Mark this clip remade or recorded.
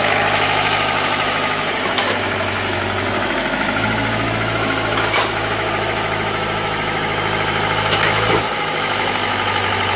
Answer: remade